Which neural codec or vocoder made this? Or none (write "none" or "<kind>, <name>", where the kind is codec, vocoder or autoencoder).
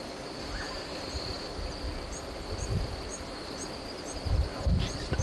none